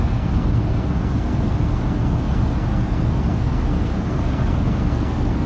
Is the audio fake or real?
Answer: fake